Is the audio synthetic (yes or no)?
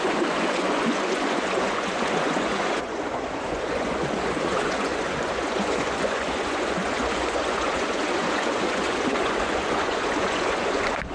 yes